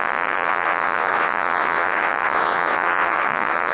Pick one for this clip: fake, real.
fake